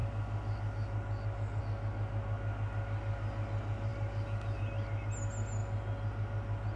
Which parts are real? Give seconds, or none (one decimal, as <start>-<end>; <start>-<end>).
0.0-6.8